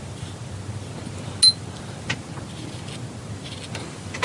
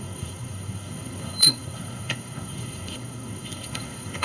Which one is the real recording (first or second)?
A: first